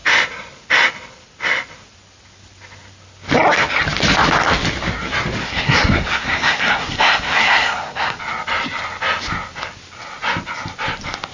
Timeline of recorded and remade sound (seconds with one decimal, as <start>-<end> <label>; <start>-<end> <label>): 0.0-5.4 recorded; 5.4-8.2 remade; 8.2-11.3 recorded